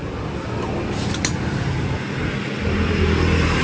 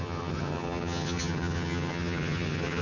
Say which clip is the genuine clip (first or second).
first